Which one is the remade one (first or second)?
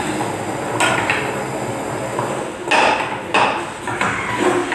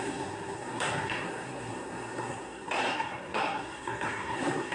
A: second